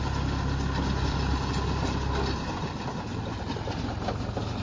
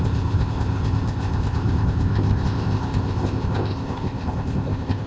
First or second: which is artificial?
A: second